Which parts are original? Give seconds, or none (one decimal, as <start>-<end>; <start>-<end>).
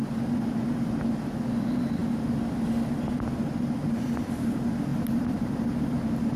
0.0-4.9; 5.5-6.4